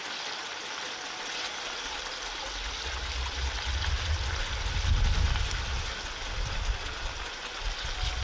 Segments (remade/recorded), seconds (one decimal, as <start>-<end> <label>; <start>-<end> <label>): 0.0-8.2 recorded